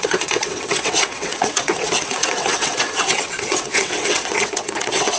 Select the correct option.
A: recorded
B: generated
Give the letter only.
B